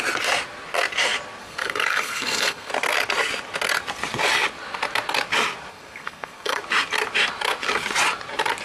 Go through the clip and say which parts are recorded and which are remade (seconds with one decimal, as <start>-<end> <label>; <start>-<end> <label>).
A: 0.0-1.4 recorded; 1.4-2.7 remade; 2.7-5.7 recorded; 5.7-6.6 remade; 6.6-8.6 recorded